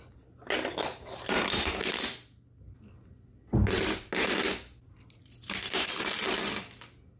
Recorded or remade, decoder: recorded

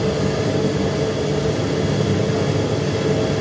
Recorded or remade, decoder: recorded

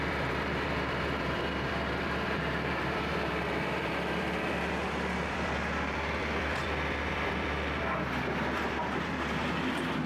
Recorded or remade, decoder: remade, vocoder, BigVGAN v2